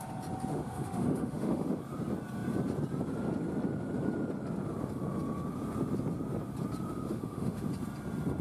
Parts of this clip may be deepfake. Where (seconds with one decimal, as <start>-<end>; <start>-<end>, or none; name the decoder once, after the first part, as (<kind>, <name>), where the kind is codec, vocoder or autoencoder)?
0.5-1.8 (autoencoder, DAC-VAE); 6.9-7.7